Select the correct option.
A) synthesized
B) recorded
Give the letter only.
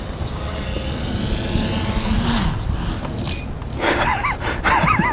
B